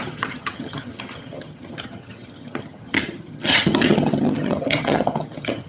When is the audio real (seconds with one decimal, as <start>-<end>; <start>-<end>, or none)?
none